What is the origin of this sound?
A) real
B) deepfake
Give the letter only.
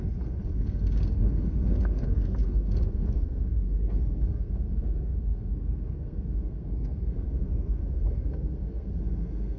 B